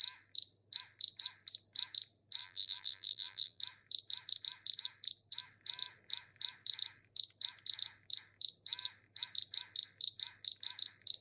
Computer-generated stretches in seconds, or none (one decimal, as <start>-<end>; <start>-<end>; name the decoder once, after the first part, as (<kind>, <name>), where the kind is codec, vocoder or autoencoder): 2.4-3.6 (vocoder, BigVGAN v2)